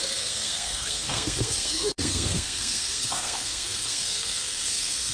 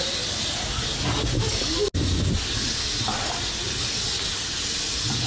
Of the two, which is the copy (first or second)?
first